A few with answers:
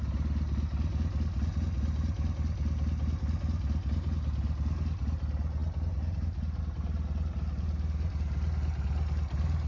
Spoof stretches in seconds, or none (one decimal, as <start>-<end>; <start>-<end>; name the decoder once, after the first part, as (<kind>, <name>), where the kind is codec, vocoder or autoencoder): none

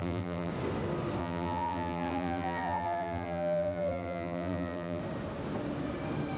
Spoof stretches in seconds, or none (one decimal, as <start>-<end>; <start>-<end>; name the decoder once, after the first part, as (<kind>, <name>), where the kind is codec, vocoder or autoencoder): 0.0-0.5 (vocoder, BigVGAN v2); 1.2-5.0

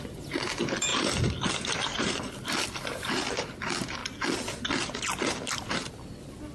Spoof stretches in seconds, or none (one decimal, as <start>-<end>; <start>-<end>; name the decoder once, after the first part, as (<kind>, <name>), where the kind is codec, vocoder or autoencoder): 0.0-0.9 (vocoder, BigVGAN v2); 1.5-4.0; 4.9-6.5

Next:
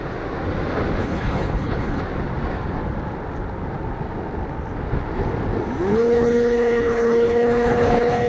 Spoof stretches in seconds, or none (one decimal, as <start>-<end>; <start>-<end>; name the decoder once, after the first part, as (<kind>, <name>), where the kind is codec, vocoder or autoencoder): 1.0-2.0 (codec, HILCodec); 5.9-8.3

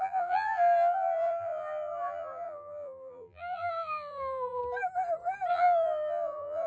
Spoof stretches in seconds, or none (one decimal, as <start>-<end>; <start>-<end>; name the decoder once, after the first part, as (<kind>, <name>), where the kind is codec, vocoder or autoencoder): 0.0-4.6 (vocoder, BigVGAN v2); 5.5-6.7